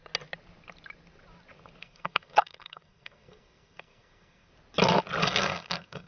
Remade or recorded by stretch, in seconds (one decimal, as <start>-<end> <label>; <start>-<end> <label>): 0.0-1.8 recorded; 1.8-4.5 remade; 4.5-5.2 recorded; 5.2-6.1 remade